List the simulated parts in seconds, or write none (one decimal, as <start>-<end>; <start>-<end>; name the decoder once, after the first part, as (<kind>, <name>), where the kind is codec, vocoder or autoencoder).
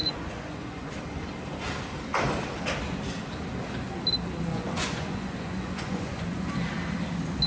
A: 0.0-0.9 (vocoder, Vocos); 4.5-6.5